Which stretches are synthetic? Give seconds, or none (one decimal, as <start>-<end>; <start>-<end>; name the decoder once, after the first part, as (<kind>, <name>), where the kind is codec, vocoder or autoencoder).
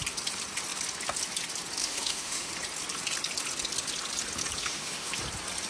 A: 1.8-2.5 (autoencoder, DAC-VAE); 4.6-5.1